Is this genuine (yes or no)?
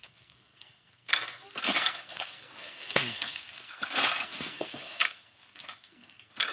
no